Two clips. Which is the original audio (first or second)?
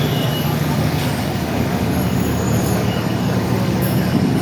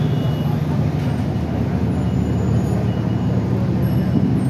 second